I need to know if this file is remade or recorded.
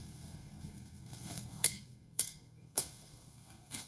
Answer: remade